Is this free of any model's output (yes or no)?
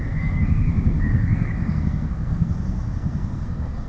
no